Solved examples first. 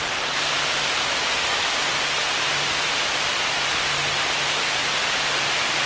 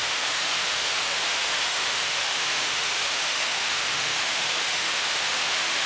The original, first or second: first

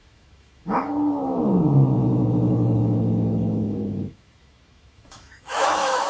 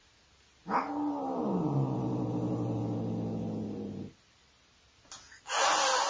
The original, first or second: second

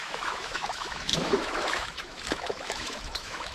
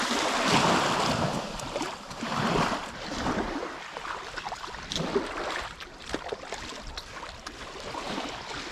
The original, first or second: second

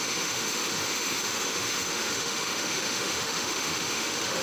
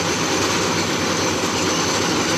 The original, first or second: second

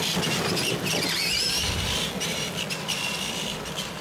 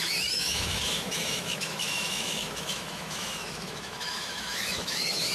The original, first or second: first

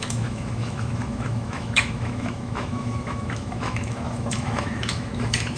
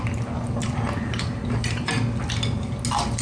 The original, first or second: second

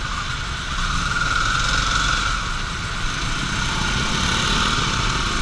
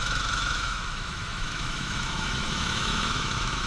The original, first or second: first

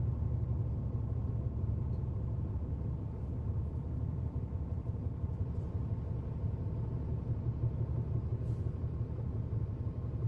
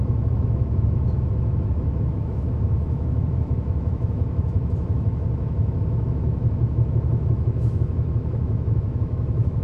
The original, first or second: first